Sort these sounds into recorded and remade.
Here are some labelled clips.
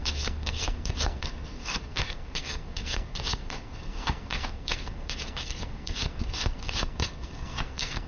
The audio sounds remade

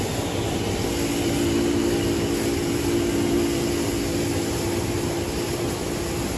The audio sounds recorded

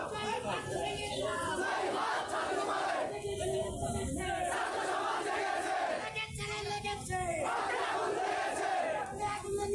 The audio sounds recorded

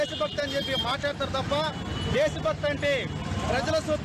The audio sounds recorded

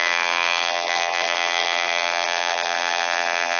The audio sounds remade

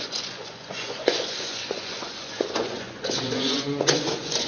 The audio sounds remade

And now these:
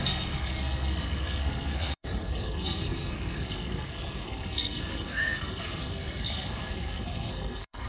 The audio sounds remade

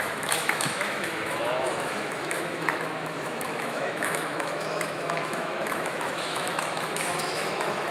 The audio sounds remade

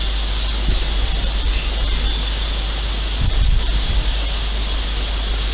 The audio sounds recorded